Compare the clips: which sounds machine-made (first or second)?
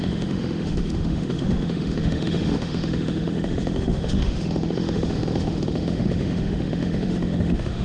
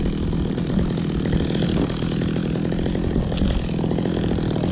first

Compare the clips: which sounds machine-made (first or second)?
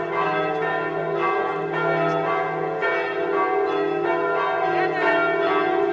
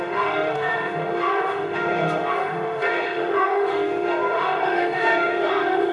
second